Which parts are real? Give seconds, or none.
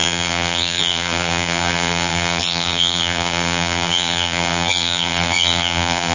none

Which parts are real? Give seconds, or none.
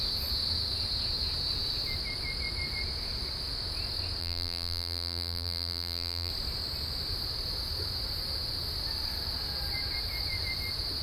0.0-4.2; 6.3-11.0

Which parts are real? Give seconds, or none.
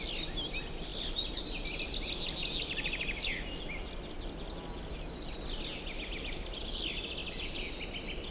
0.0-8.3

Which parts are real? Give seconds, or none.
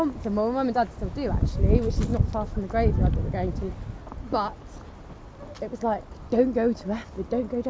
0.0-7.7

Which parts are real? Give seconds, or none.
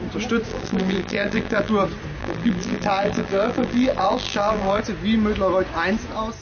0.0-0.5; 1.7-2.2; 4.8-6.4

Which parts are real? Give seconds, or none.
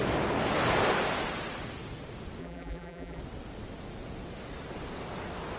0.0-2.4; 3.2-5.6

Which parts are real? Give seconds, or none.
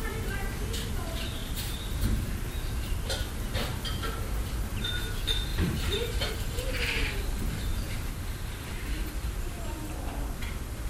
0.0-1.4; 3.4-5.5; 6.3-7.7; 9.7-10.9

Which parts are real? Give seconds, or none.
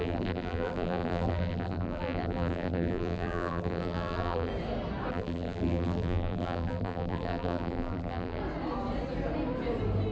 4.5-5.1; 8.4-10.1